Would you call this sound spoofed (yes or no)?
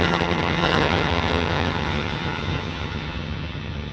yes